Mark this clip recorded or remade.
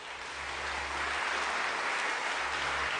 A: recorded